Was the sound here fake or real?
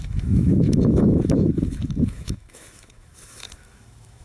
fake